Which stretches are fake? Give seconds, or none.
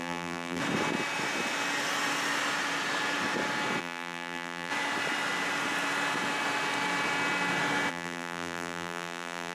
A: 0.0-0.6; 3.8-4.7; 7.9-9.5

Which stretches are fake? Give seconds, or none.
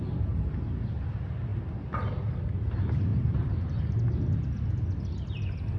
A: 3.1-3.8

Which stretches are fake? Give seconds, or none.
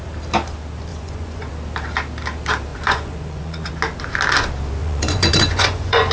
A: 0.9-1.5; 2.7-3.7; 4.8-6.1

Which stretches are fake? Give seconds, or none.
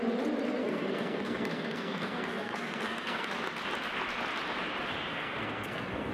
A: 0.6-3.3; 5.1-6.1